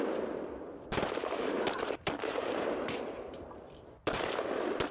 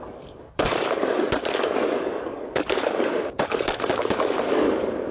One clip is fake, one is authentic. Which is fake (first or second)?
second